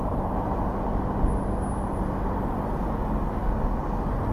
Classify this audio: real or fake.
real